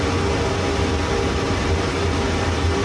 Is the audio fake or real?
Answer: real